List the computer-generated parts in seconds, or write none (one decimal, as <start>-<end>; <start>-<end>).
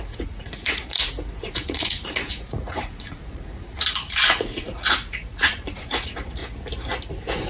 0.0-6.4; 7.1-7.5